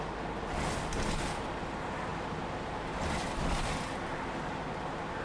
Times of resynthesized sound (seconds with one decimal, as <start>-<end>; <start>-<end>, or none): none